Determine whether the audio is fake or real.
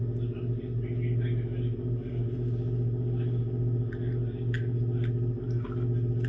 real